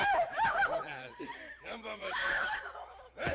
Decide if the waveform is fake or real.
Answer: fake